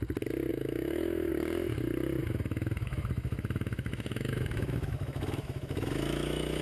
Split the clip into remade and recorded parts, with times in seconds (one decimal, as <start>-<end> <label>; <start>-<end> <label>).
0.0-0.5 recorded; 0.5-1.3 remade; 1.3-2.2 recorded; 2.2-6.6 remade